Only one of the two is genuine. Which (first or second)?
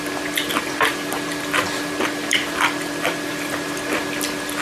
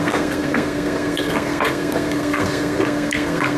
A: first